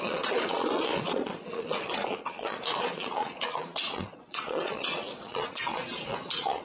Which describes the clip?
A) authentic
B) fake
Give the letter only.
B